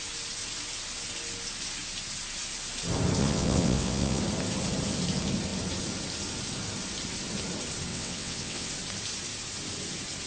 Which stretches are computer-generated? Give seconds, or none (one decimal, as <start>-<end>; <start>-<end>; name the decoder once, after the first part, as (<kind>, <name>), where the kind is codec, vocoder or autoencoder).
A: 3.2-4.2 (vocoder, WaveNeXt); 7.9-8.7